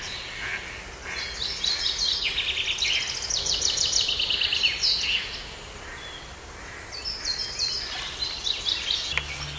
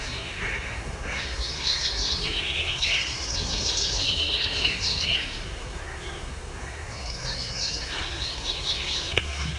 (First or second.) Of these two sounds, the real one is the first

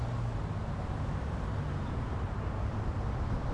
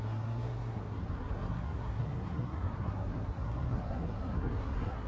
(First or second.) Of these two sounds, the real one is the first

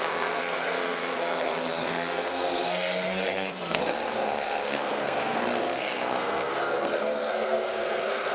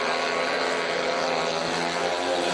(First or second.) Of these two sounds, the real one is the second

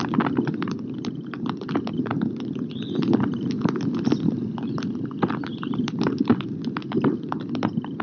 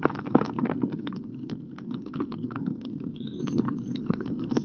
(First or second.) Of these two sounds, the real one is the first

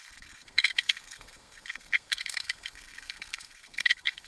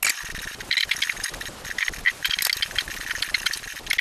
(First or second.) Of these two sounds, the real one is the second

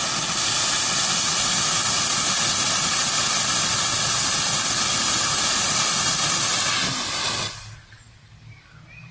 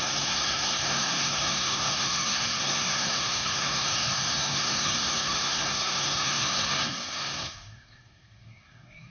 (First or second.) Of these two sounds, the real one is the first